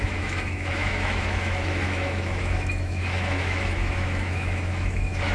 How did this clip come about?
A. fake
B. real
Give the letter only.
A